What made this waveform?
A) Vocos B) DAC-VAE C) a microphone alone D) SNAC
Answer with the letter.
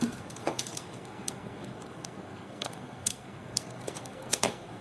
D